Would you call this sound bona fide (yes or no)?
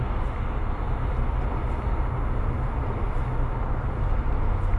yes